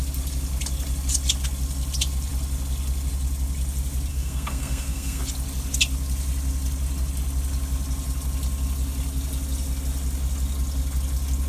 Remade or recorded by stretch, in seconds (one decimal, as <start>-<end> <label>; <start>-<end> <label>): 0.0-4.1 recorded; 4.1-5.2 remade; 5.2-11.5 recorded